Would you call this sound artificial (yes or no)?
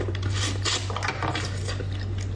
no